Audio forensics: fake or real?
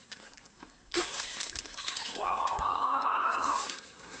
fake